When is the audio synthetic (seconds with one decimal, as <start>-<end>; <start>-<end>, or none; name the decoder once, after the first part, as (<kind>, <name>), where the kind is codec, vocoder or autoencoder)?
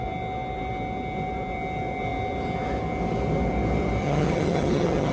4.0-5.1 (vocoder, HiFi-GAN)